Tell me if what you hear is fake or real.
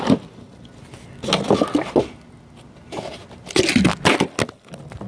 real